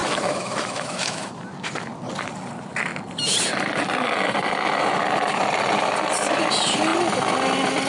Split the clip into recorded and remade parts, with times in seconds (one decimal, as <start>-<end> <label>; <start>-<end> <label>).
0.0-1.3 remade; 1.3-7.9 recorded